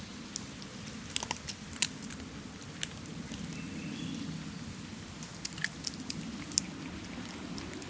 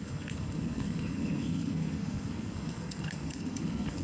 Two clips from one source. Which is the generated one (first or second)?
second